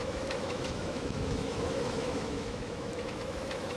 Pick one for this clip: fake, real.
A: fake